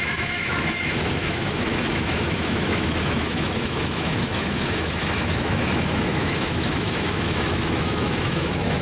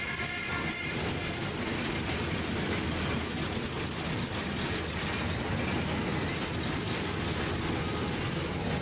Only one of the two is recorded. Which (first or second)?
second